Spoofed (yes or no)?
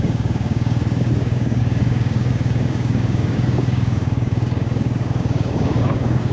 yes